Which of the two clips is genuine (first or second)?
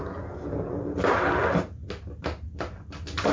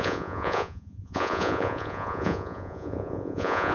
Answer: first